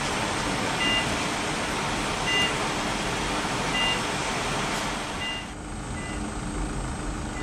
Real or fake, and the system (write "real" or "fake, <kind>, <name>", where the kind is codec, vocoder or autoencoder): real